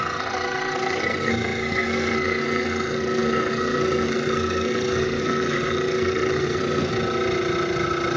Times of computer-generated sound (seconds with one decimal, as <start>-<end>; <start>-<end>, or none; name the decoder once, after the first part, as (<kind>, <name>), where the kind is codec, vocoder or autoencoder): 0.0-6.9 (codec, SNAC)